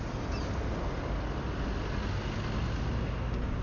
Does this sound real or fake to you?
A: real